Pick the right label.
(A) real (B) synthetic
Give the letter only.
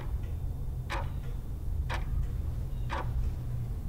A